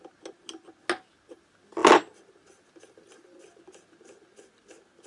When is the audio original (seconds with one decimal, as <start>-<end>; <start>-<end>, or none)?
0.0-5.1